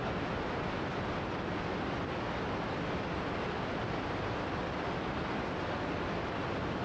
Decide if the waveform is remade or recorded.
recorded